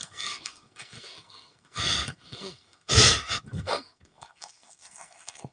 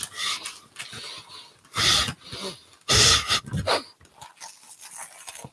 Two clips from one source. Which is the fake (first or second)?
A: first